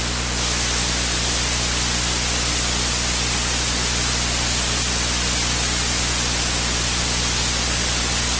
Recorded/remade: recorded